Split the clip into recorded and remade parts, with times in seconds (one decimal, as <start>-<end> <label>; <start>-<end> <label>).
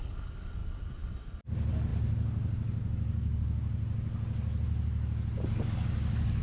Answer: 0.0-6.4 recorded